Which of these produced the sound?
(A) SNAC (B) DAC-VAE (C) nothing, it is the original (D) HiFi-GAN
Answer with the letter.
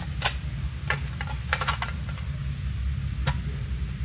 C